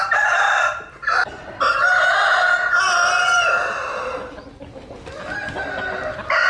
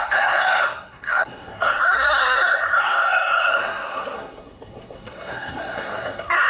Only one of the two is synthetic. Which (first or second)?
second